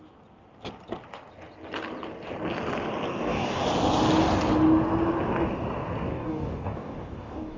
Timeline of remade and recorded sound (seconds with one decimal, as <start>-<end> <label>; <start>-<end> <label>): 0.0-3.1 recorded; 3.1-3.6 remade; 3.6-6.1 recorded; 6.1-7.6 remade